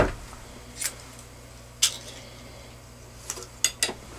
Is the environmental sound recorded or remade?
recorded